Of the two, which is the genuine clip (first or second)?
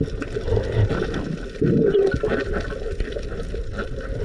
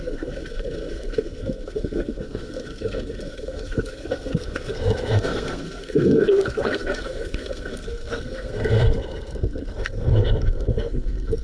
first